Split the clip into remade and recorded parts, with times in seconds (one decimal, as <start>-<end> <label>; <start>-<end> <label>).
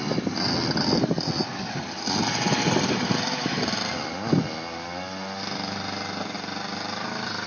0.0-7.5 recorded